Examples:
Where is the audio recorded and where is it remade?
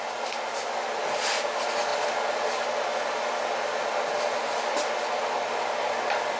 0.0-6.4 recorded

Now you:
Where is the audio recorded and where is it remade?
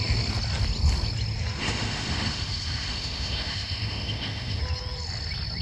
0.0-1.6 recorded; 1.6-4.6 remade; 4.6-5.6 recorded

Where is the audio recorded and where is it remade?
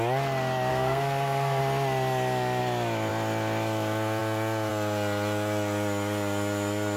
0.0-0.7 recorded; 0.7-1.6 remade; 1.6-7.0 recorded